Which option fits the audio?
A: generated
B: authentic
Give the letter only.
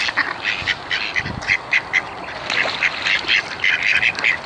B